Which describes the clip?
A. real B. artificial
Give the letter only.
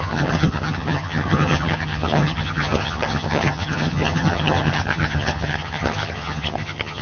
B